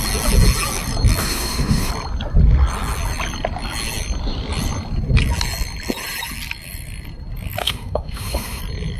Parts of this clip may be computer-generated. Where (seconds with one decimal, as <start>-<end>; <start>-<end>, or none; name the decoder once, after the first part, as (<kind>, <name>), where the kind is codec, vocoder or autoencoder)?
1.2-1.9 (autoencoder, DAC-VAE); 7.6-8.6